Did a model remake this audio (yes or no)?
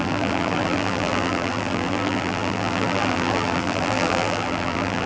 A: yes